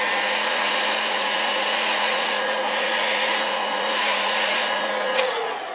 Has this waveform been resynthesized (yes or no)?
yes